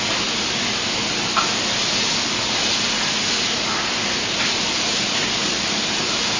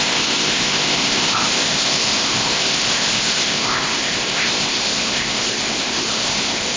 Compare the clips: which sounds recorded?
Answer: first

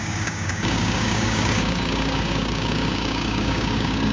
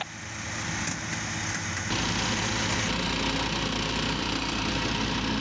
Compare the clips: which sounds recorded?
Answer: second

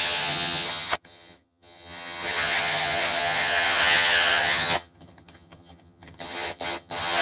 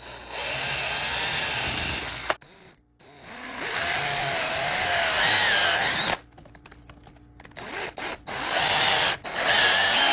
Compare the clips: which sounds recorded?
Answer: second